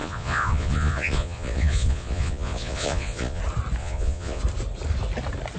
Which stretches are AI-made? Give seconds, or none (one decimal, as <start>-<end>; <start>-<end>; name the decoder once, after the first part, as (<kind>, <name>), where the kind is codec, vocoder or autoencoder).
0.0-3.4 (vocoder, Vocos); 3.8-4.4